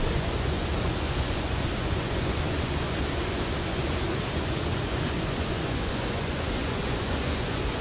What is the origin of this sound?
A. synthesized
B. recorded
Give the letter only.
A